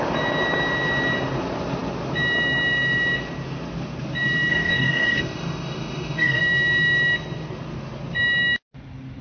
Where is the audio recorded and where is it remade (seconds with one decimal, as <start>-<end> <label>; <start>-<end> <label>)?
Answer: 0.0-4.5 recorded; 4.5-6.4 remade; 6.4-9.2 recorded